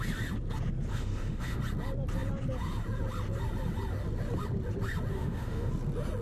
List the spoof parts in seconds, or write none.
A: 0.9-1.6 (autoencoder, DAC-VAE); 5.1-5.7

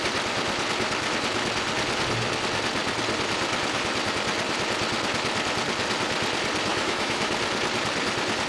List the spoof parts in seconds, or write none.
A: 6.7-7.3 (autoencoder, DAC-VAE)